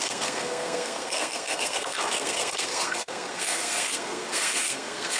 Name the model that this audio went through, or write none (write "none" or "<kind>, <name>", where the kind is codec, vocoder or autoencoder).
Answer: codec, SNAC